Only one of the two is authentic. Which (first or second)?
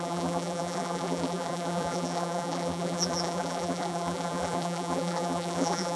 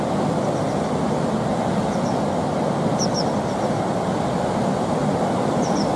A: second